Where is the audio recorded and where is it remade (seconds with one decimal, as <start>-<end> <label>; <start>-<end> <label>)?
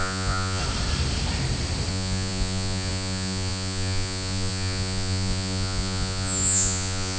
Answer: 0.0-0.6 remade; 0.6-1.9 recorded; 1.9-7.2 remade